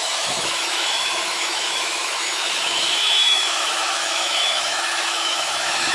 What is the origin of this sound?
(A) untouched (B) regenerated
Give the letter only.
B